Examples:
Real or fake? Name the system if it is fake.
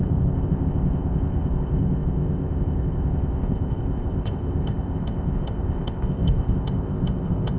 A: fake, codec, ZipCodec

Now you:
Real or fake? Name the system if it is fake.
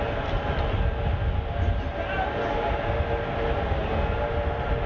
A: real